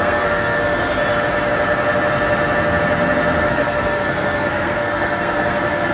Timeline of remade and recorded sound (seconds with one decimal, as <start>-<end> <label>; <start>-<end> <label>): 0.0-1.0 remade; 1.0-3.5 recorded; 3.5-5.9 remade